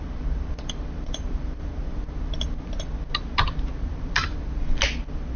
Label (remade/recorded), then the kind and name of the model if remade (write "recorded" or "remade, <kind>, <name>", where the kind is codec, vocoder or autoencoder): recorded